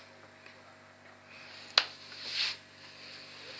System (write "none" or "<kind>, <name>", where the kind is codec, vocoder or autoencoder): none